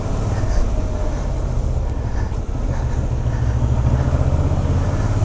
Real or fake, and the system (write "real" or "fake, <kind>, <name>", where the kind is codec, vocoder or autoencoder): real